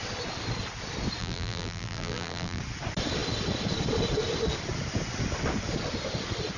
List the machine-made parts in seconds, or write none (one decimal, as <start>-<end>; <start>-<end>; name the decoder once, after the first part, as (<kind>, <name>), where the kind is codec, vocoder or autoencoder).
1.2-2.6 (vocoder, BigVGAN v2)